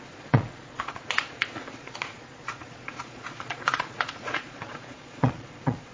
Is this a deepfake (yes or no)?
yes